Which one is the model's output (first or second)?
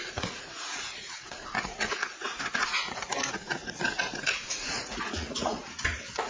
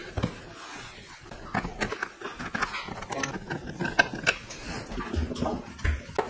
first